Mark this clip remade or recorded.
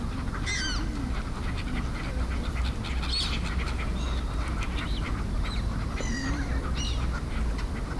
recorded